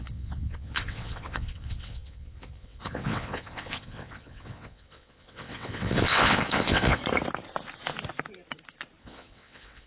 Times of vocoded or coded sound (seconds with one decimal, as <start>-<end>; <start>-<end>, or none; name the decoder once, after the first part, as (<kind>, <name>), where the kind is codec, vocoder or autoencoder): 0.0-7.0 (vocoder, WaveNeXt); 9.0-9.9